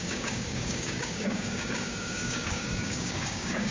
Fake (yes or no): yes